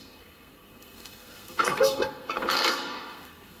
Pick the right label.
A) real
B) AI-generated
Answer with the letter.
B